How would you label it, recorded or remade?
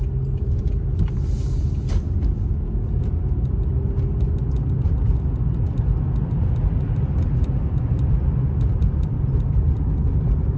recorded